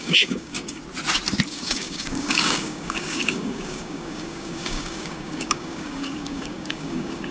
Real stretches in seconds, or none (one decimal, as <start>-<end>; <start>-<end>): 0.8-1.5